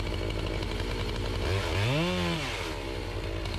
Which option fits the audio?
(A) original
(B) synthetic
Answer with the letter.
A